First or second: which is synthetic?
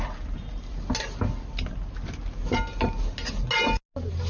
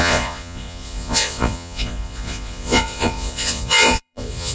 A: second